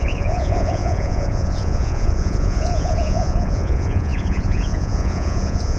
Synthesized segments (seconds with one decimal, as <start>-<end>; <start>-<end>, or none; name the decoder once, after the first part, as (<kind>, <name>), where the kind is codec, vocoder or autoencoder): 0.0-5.8 (vocoder, Vocos)